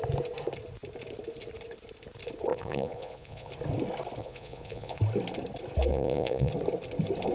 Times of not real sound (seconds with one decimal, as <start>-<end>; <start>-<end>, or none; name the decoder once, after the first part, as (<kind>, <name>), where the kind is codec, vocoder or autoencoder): 2.5-3.5 (vocoder, Vocos); 4.2-5.0; 5.9-6.5